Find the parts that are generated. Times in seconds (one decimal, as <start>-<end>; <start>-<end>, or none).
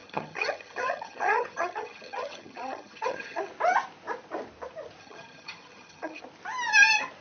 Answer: 0.0-3.5; 5.0-6.2